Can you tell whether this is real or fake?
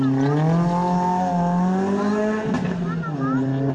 real